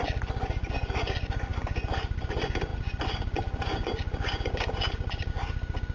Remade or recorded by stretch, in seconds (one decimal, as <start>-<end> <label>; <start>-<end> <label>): 0.0-1.5 recorded; 1.5-2.3 remade; 2.3-5.9 recorded